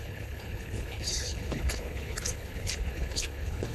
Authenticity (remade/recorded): remade